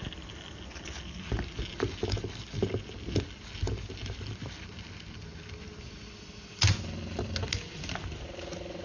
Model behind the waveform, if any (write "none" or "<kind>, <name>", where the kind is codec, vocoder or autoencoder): none